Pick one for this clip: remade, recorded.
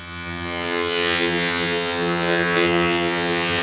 remade